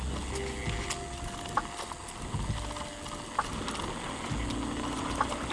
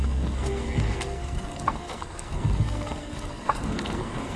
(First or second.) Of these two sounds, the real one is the first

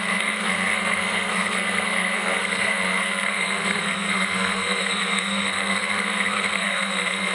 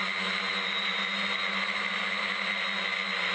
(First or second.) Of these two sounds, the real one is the second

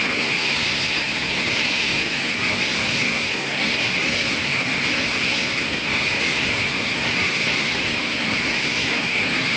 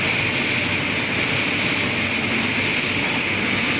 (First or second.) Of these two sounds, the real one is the second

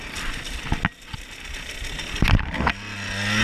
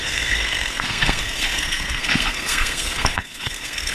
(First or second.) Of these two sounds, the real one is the first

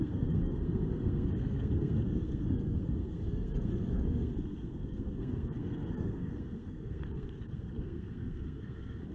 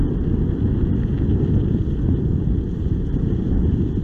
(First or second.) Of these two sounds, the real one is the second